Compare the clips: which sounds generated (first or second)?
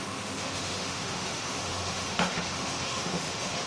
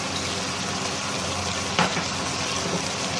first